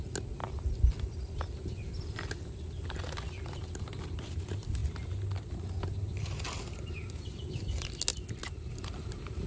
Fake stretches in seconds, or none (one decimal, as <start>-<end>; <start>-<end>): none